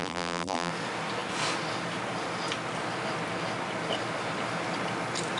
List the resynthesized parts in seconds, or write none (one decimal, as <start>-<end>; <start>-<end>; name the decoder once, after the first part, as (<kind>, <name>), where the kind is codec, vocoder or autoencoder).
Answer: 0.0-0.7 (vocoder, BigVGAN v2)